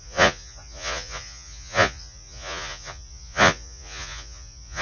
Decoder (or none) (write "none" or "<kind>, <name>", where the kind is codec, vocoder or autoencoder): vocoder, Vocos